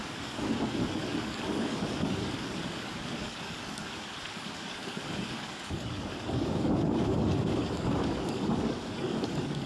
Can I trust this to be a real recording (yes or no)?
no